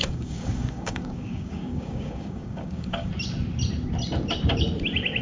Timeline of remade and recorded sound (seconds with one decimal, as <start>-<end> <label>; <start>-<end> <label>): 0.0-3.1 remade; 3.1-5.2 recorded